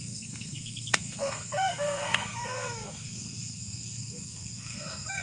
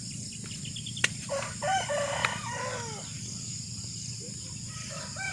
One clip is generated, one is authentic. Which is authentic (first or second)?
second